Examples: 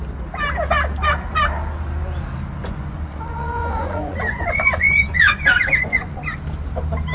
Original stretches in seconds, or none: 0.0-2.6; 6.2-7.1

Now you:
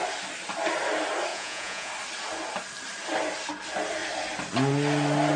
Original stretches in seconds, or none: 0.0-1.3; 1.9-5.4